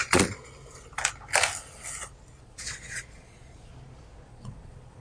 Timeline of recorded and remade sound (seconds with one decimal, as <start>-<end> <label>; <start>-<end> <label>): 0.0-0.5 remade; 0.5-2.4 recorded; 2.4-3.7 remade; 3.7-4.3 recorded; 4.3-5.0 remade